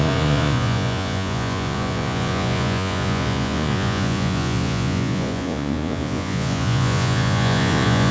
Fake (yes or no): yes